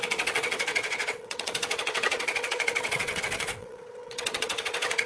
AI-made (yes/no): yes